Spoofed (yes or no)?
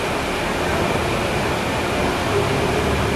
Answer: no